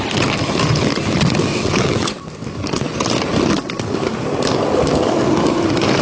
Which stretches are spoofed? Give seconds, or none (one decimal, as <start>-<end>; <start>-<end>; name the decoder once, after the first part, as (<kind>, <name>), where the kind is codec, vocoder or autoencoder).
1.5-2.2 (vocoder, WaveNeXt)